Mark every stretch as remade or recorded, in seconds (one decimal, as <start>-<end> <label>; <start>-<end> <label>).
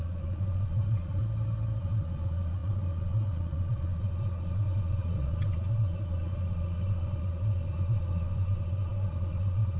0.0-1.2 remade; 1.2-1.8 recorded; 1.8-9.8 remade